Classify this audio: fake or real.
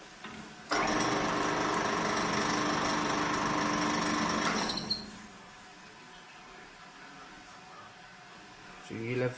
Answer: real